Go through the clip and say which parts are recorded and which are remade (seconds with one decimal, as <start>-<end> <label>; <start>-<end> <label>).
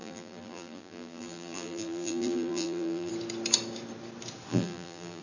0.0-3.1 remade; 3.1-4.5 recorded; 4.5-5.2 remade